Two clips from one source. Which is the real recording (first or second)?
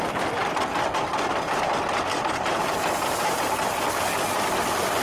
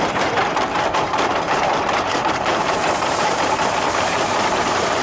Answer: first